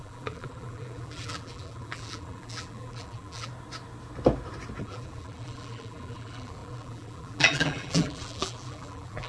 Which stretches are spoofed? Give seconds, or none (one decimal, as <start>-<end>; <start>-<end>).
0.0-3.5; 4.8-9.3